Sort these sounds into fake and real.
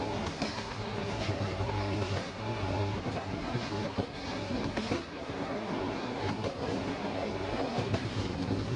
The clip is fake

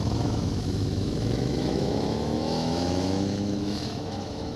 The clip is fake